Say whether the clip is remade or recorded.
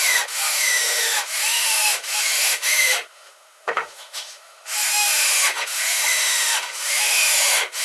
remade